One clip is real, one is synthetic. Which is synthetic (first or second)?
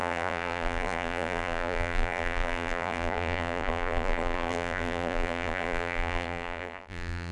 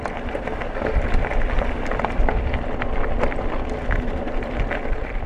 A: first